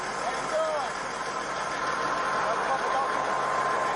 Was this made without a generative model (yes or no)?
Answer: yes